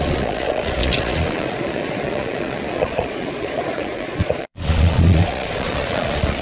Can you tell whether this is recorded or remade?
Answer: remade